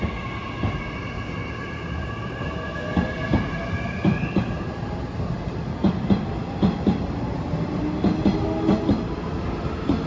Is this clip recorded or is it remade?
recorded